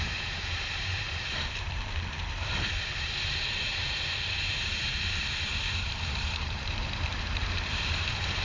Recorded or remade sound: remade